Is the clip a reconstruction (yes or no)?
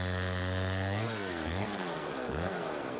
yes